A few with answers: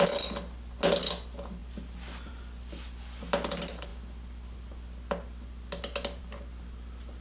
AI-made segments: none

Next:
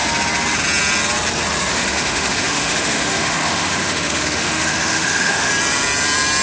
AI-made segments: 1.7-5.5 (autoencoder, DAC-VAE)

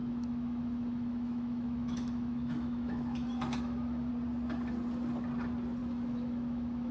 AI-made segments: 0.0-4.1 (autoencoder, DAC-VAE); 5.8-6.9

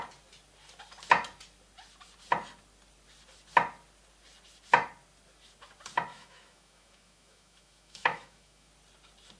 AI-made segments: 6.1-8.7 (autoencoder, DAC-VAE)